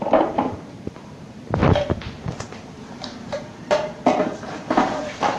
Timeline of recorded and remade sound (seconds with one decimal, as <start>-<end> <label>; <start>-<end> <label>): 0.0-1.6 remade; 1.6-2.6 recorded; 2.6-5.4 remade

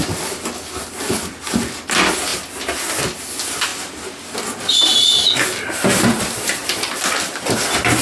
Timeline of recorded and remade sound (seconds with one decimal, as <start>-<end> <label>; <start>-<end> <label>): 0.0-2.3 recorded; 2.3-3.2 remade; 3.2-6.6 recorded; 6.6-7.3 remade; 7.3-8.0 recorded